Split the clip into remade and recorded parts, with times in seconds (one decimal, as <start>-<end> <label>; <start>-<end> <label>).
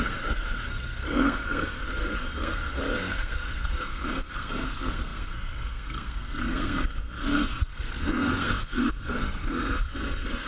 0.0-10.5 remade